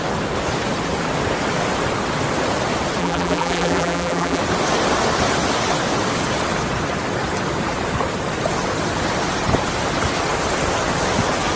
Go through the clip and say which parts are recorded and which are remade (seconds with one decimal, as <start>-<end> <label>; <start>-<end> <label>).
0.0-3.0 recorded; 3.0-4.4 remade; 4.4-11.6 recorded